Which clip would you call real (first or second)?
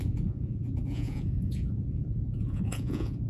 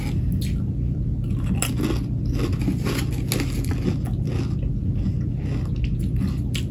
second